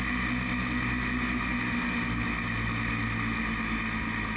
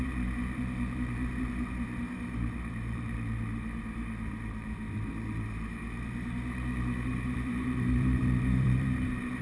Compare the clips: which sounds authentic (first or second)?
first